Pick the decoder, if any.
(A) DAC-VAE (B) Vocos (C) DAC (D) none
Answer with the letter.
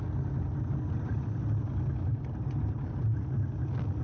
D